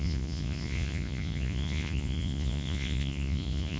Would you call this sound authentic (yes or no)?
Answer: no